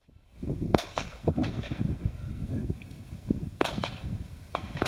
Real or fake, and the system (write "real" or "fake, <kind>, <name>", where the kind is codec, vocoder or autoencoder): fake, codec, SNAC